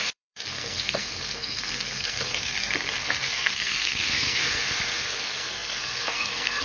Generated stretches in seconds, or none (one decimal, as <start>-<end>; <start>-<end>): 0.0-6.6